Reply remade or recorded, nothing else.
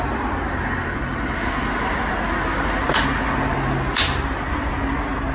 recorded